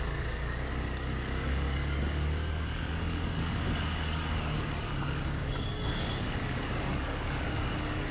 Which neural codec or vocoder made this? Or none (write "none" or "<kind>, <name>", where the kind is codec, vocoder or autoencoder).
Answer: codec, DAC